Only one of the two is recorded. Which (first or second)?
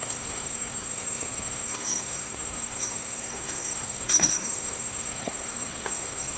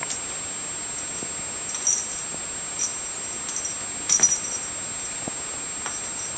second